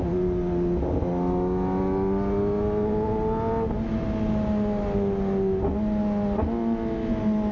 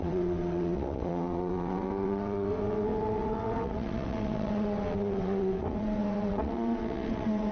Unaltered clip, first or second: first